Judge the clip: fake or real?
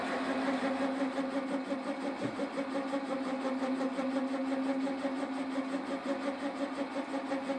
real